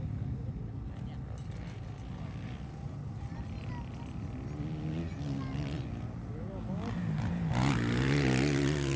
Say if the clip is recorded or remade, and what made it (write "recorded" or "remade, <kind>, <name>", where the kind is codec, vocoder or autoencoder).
recorded